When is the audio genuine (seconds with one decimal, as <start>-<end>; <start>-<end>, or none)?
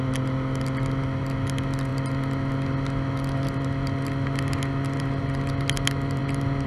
0.0-6.7